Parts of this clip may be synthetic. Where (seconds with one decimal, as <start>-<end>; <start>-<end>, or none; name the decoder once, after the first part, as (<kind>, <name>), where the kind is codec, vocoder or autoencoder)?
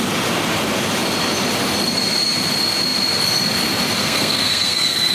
4.0-5.1 (codec, SNAC)